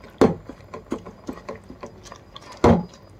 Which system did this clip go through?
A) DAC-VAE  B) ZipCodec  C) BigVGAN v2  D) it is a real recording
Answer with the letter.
D